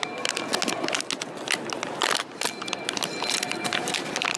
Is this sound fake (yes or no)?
no